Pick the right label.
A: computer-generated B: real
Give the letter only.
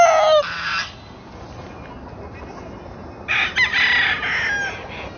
B